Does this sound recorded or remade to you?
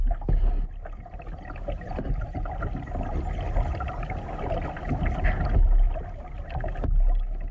recorded